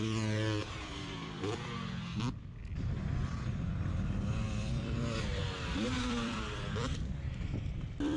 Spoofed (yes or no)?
yes